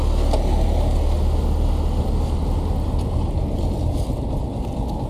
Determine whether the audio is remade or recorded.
recorded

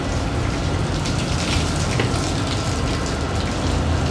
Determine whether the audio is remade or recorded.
recorded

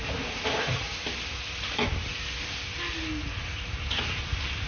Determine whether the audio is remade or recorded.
recorded